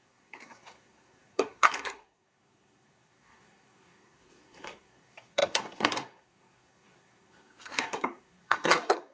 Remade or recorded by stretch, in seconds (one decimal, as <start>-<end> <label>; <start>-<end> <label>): 0.0-9.1 remade